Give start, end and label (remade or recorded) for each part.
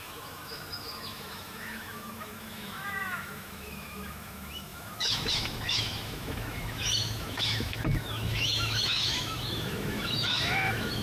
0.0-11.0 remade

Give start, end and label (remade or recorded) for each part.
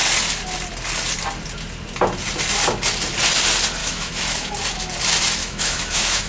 0.0-3.8 recorded; 3.8-4.5 remade; 4.5-5.4 recorded; 5.4-6.3 remade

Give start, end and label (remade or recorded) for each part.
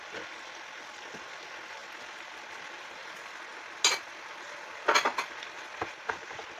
0.0-6.6 recorded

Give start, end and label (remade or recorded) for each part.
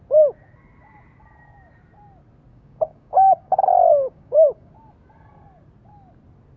0.0-2.5 recorded; 2.5-4.7 remade; 4.7-6.6 recorded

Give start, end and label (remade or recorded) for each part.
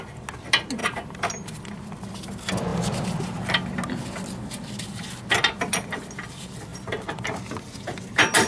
0.0-0.8 recorded; 0.8-1.8 remade; 1.8-6.7 recorded; 6.7-8.5 remade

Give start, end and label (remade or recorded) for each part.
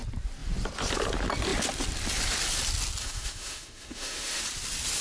0.0-3.0 recorded; 3.0-4.4 remade; 4.4-5.0 recorded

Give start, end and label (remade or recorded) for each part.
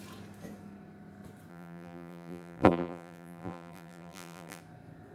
0.0-1.5 recorded; 1.5-4.6 remade; 4.6-5.1 recorded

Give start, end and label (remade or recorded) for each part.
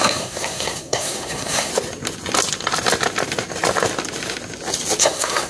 0.0-1.7 remade; 1.7-5.0 recorded; 5.0-5.5 remade